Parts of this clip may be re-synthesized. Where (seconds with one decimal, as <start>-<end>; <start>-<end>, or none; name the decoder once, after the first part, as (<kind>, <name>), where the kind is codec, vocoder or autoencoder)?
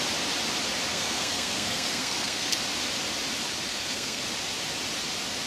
0.9-2.6 (codec, SNAC); 3.7-4.2